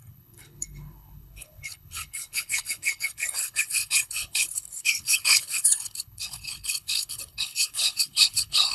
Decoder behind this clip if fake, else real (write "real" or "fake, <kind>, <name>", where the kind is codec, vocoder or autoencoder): fake, codec, HILCodec